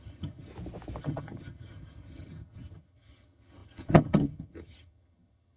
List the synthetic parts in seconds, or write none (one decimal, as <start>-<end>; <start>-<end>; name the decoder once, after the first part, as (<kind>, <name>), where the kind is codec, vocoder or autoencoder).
0.0-0.5 (vocoder, HiFi-GAN); 1.0-5.6